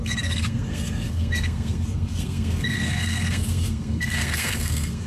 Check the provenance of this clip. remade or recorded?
remade